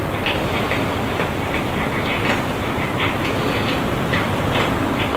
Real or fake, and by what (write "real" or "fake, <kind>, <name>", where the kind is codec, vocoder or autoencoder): real